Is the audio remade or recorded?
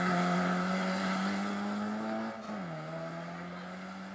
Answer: recorded